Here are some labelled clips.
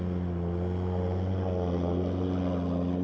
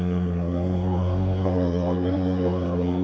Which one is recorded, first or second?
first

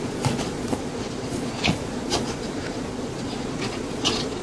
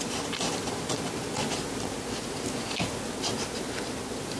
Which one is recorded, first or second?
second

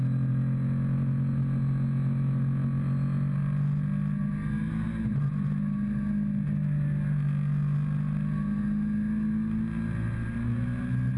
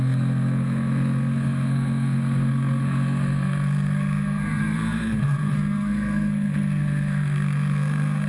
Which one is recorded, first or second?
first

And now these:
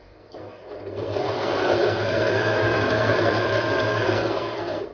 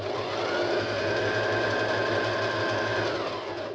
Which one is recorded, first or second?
second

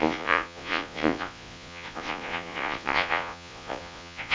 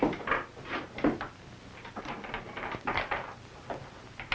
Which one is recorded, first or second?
second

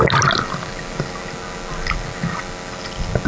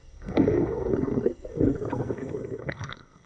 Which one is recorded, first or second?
first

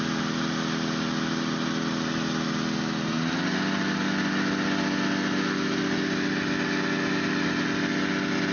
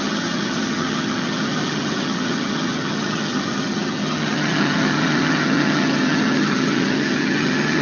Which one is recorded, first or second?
first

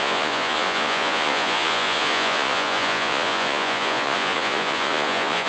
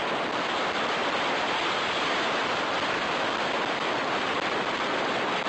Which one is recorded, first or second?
second